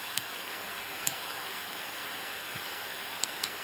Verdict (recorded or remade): remade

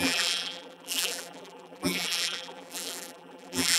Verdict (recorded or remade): remade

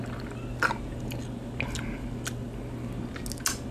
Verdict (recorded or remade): recorded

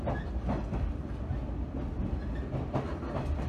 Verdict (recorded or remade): recorded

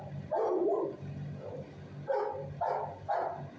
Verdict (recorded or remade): recorded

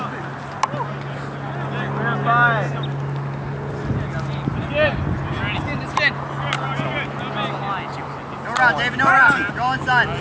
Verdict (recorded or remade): recorded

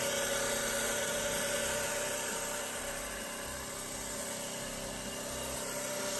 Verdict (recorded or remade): recorded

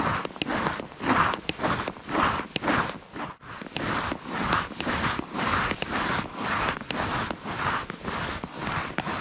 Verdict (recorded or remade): recorded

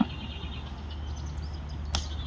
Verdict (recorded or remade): recorded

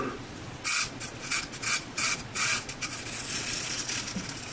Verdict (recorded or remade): remade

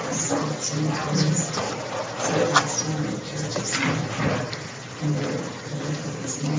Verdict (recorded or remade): recorded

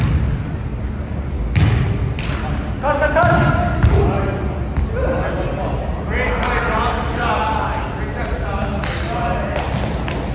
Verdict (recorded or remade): recorded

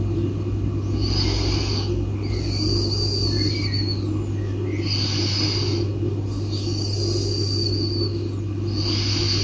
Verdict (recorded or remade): recorded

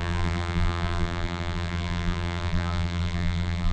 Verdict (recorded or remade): remade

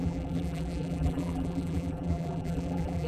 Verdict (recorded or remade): remade